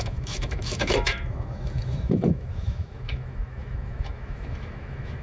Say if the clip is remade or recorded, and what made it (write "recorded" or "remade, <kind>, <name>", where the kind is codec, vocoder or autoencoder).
remade, autoencoder, DAC-VAE